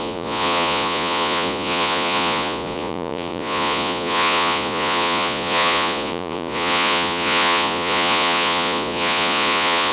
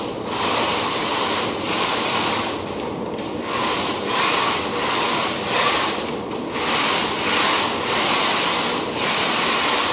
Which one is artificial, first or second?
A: first